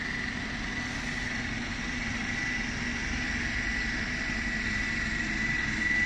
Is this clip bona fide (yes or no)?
yes